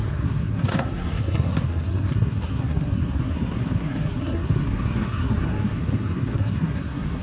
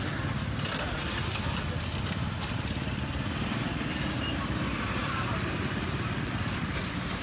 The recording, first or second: second